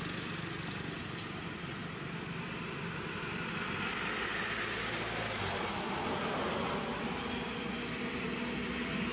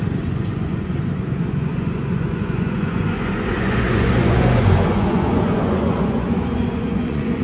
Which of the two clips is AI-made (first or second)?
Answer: second